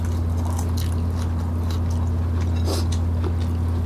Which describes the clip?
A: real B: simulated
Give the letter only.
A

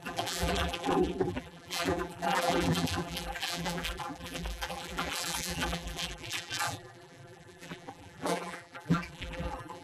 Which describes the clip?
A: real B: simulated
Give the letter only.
B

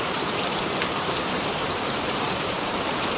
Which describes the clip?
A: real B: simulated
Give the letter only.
B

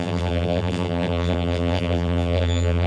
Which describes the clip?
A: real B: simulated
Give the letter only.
B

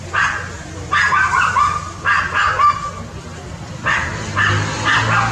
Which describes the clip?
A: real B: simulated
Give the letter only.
A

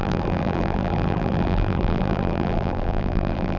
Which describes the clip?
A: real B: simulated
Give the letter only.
B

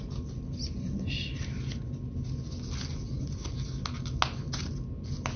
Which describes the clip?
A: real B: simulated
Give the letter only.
A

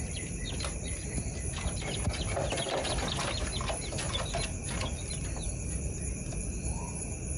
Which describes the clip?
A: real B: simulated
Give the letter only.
B